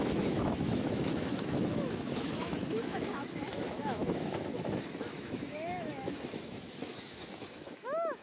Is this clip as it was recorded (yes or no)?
no